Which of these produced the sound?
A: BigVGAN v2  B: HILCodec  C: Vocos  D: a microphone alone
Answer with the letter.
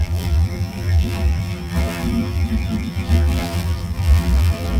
A